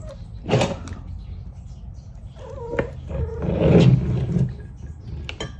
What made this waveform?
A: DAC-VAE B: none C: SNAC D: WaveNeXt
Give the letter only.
B